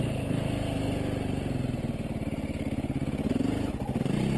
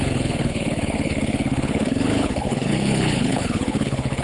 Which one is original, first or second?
first